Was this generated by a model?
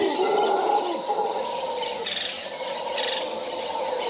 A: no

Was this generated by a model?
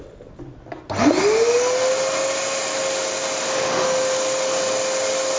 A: no